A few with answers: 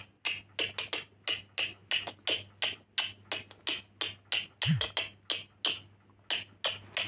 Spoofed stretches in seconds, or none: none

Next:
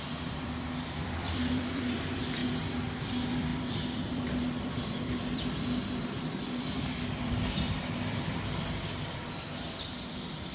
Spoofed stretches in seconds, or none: 0.0-2.4 (vocoder, BigVGAN v2); 3.1-10.5